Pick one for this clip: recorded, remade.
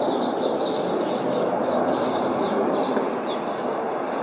recorded